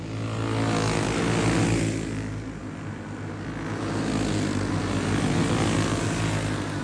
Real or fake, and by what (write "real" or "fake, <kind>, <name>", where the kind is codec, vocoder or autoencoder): real